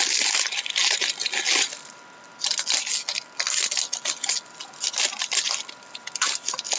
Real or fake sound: real